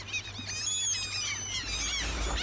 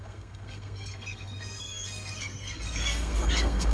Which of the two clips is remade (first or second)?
second